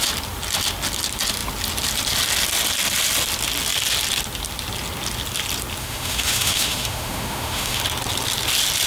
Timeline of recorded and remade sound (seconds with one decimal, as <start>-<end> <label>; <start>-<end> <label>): 0.0-5.8 recorded; 5.8-7.8 remade; 7.8-8.9 recorded